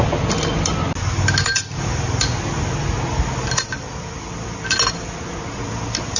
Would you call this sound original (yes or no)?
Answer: yes